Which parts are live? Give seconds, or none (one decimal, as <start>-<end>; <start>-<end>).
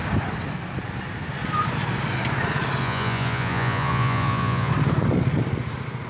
0.0-2.8; 4.7-6.1